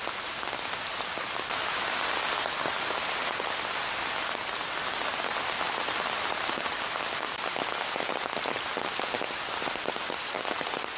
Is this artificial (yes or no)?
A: no